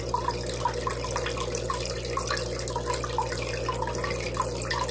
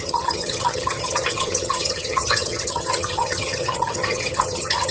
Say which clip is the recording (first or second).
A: first